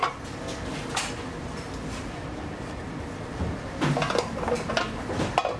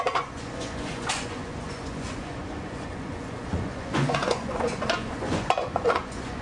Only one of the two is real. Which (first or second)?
first